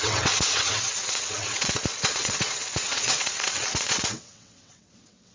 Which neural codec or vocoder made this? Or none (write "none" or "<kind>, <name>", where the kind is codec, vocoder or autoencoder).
vocoder, WaveNeXt